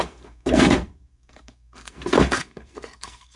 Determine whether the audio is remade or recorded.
remade